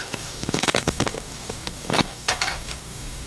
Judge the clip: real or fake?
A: fake